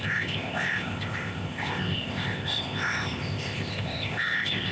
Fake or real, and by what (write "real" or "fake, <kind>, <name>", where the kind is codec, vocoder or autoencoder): fake, codec, ZipCodec